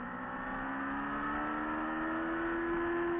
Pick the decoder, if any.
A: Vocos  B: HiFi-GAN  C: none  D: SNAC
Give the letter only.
C